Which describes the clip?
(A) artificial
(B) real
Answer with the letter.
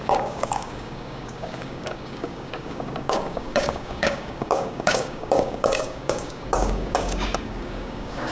A